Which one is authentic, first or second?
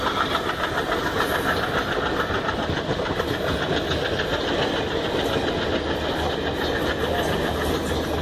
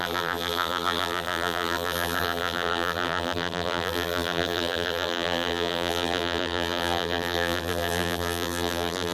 first